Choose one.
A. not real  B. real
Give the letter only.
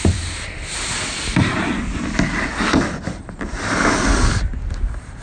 B